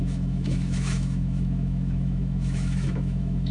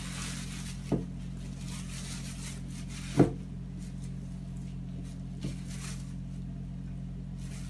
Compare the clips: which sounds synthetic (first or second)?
first